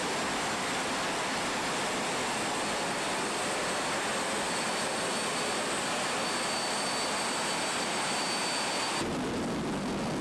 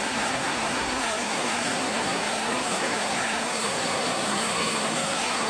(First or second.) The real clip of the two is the first